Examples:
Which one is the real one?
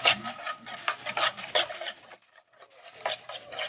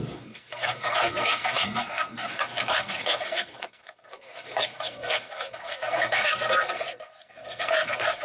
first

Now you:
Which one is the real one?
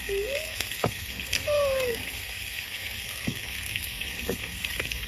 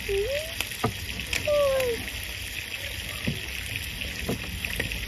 second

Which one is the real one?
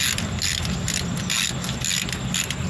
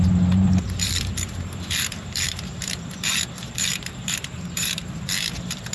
first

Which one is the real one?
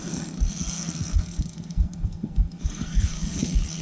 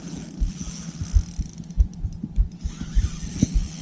second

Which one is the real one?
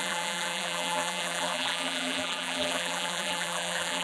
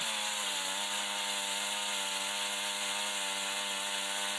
second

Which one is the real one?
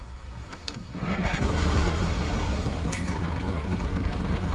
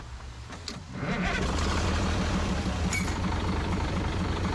second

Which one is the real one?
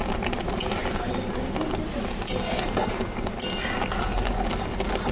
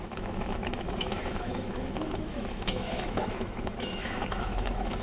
first